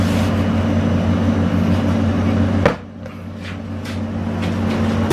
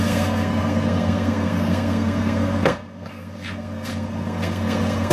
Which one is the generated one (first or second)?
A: second